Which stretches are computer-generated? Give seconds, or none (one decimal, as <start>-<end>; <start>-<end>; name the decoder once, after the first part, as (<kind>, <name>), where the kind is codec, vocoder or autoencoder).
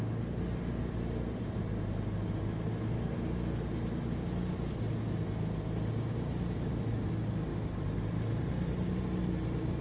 7.5-9.0 (vocoder, BigVGAN v2)